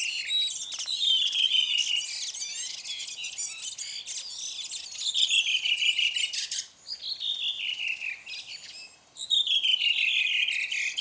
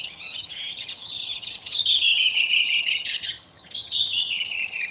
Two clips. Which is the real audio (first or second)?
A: first